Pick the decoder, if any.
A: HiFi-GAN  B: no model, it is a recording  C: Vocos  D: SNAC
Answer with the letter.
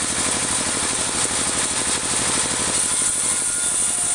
B